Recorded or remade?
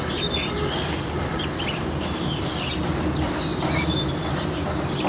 recorded